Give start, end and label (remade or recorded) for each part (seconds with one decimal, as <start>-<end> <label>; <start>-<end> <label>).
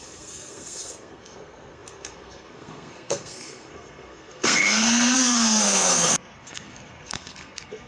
0.0-7.9 remade